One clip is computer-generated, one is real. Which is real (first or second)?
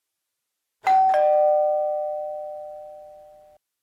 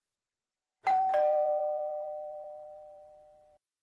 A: first